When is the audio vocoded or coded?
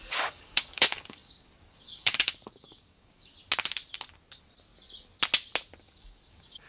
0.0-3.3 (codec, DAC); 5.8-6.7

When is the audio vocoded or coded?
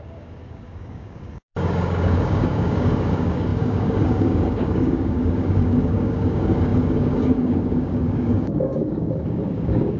0.0-10.0 (codec, DAC)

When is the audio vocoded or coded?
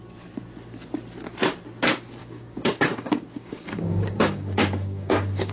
2.2-5.5 (codec, DAC)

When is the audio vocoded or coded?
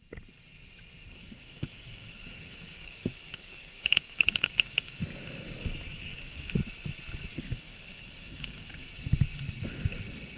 1.2-5.0 (codec, DAC); 6.1-6.6; 7.3-8.9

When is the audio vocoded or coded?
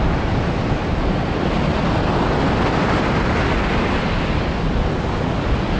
none